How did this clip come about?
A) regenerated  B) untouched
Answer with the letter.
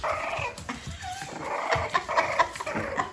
B